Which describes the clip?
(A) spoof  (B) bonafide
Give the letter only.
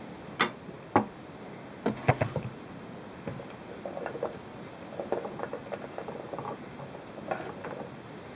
B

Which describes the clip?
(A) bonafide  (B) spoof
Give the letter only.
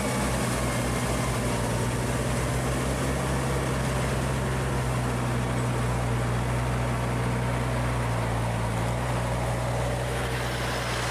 A